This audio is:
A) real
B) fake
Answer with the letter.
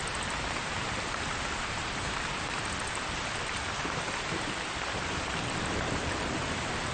B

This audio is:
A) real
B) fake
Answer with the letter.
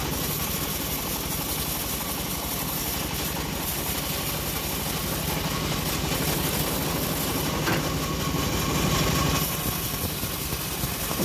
A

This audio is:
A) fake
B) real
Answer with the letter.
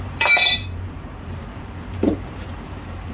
A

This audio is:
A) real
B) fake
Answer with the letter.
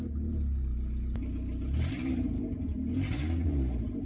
B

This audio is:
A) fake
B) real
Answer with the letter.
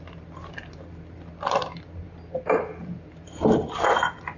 A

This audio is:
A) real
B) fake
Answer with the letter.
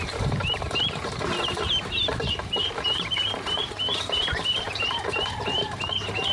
B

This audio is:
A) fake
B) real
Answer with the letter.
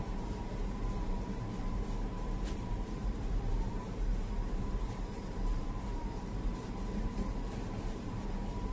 A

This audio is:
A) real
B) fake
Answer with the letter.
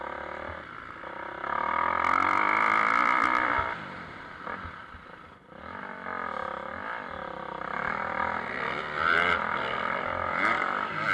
B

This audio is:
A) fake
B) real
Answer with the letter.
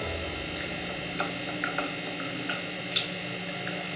B